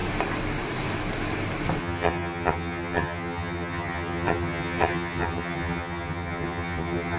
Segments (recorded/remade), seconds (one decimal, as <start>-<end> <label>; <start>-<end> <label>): 0.0-1.8 recorded; 1.8-7.2 remade